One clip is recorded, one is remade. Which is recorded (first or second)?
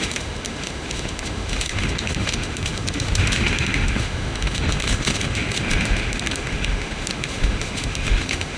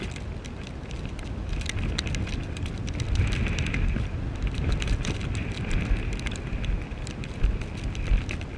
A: second